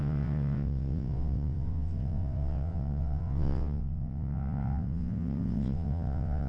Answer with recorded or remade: remade